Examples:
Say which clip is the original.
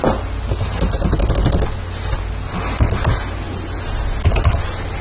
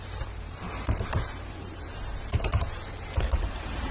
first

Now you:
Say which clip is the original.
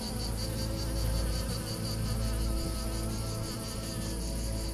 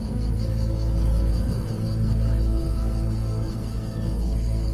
first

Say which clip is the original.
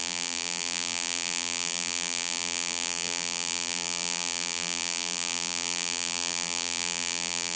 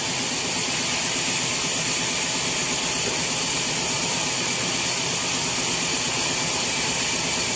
second